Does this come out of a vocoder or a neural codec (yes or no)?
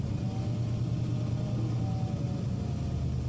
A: no